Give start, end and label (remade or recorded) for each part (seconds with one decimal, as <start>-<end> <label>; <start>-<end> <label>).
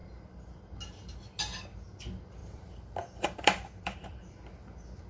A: 0.0-2.4 recorded; 2.4-4.2 remade; 4.2-5.1 recorded